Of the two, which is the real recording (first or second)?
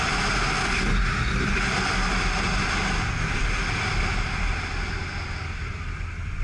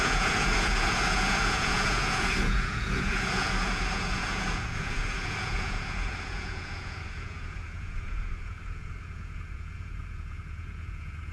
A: first